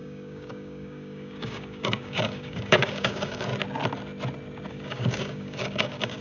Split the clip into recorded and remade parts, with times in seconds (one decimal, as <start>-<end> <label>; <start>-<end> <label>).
0.0-3.5 remade; 3.5-4.7 recorded; 4.7-6.2 remade